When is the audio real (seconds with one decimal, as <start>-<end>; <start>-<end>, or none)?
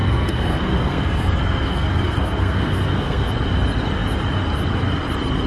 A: 3.3-5.5